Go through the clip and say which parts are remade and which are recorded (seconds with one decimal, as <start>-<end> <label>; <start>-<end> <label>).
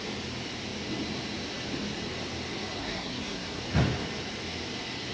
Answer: 0.0-2.8 recorded; 2.8-3.6 remade; 3.6-5.1 recorded